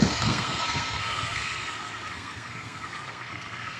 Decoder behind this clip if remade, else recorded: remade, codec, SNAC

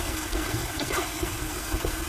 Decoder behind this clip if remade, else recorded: remade, codec, SNAC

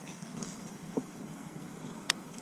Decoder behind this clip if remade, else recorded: remade, codec, SNAC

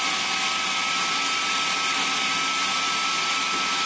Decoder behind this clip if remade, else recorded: recorded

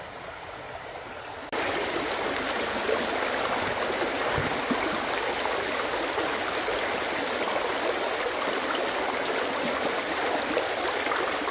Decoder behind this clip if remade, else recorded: recorded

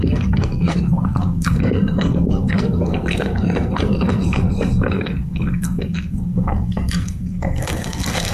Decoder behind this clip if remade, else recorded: remade, codec, SNAC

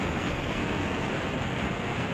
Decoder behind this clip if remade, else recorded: remade, codec, SNAC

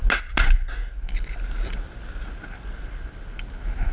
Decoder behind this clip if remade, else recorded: recorded